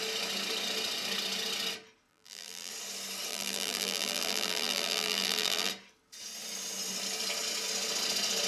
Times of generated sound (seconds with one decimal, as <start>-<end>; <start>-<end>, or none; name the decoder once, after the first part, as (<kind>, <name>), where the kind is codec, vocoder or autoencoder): 2.1-2.7 (vocoder, BigVGAN v2); 3.3-5.7